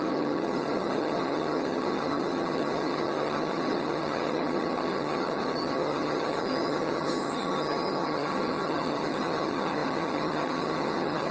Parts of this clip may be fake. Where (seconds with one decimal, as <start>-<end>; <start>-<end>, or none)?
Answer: 0.0-11.3